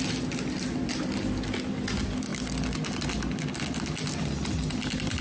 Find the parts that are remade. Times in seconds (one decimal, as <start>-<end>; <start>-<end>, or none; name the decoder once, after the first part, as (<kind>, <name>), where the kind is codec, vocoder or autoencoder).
none